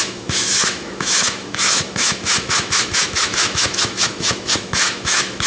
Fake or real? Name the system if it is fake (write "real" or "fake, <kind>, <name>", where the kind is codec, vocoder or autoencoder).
fake, autoencoder, DAC-VAE